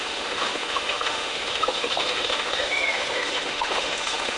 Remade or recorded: remade